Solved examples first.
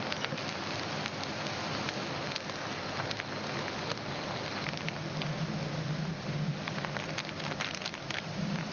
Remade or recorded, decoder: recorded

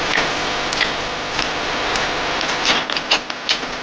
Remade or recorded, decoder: recorded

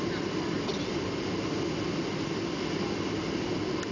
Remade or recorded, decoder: recorded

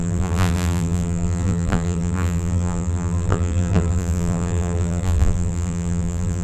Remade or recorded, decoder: remade, vocoder, BigVGAN v2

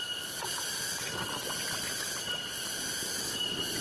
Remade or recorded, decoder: recorded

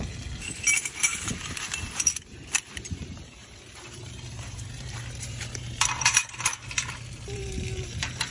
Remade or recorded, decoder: remade, vocoder, BigVGAN v2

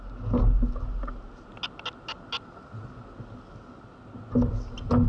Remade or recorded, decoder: recorded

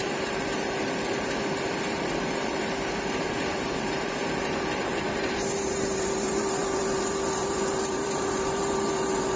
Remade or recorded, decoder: remade, vocoder, BigVGAN v2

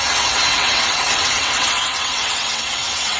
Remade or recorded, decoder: remade, vocoder, WaveNeXt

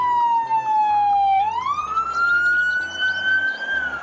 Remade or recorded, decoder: recorded